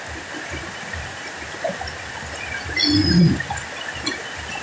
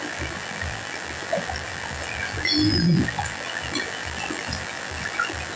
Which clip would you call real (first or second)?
first